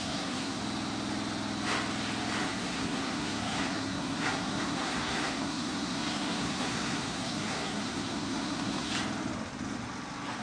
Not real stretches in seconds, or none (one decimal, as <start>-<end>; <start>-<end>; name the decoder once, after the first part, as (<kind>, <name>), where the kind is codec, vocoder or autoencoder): 0.0-0.6 (codec, SNAC); 2.4-8.9